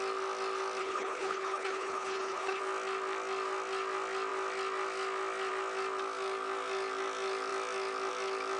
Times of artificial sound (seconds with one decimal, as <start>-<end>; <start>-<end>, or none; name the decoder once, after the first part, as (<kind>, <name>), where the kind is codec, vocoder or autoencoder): 0.8-2.6 (codec, HILCodec)